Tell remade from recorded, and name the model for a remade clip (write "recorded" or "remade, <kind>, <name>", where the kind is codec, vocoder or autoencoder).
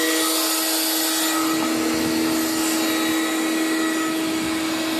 recorded